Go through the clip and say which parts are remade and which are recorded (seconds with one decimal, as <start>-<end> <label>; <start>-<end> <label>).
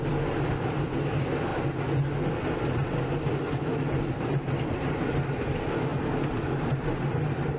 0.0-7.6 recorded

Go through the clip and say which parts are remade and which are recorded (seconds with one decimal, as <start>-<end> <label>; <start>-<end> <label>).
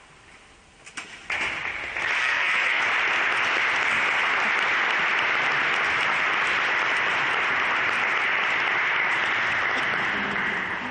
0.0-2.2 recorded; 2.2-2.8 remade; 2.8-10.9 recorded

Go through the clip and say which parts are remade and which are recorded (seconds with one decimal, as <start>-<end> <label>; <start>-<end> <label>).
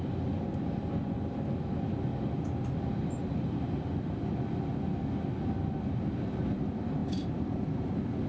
0.0-7.0 recorded; 7.0-7.9 remade; 7.9-8.3 recorded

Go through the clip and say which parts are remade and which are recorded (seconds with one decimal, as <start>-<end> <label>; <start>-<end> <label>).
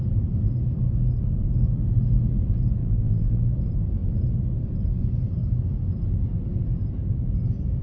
0.0-2.8 recorded; 2.8-3.4 remade; 3.4-7.8 recorded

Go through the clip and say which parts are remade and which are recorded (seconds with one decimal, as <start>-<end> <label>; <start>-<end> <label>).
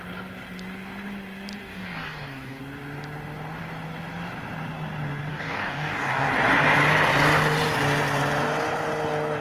0.0-1.7 recorded; 1.7-2.6 remade; 2.6-5.3 recorded; 5.3-6.3 remade; 6.3-9.4 recorded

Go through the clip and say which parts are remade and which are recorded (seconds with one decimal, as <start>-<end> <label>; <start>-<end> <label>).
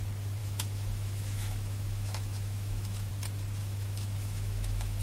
0.0-0.4 recorded; 0.4-3.1 remade; 3.1-3.6 recorded; 3.6-5.0 remade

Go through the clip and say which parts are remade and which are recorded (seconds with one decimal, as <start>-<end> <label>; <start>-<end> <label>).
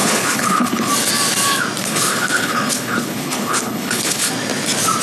0.0-0.9 remade; 0.9-1.8 recorded; 1.8-4.3 remade; 4.3-5.0 recorded